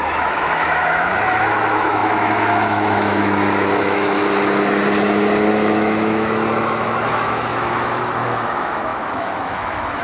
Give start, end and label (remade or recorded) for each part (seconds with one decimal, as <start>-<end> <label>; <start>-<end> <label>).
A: 0.0-4.2 remade; 4.2-5.5 recorded; 5.5-10.0 remade